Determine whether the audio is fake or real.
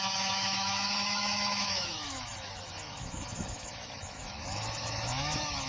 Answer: fake